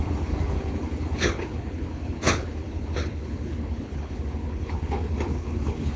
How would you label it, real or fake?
fake